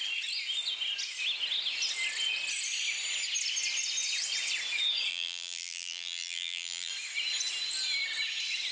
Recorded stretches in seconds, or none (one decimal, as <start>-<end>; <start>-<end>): 0.0-5.1; 6.9-8.7